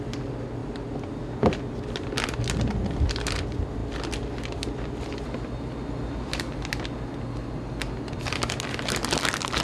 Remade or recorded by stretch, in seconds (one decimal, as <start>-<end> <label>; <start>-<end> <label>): 0.0-9.6 recorded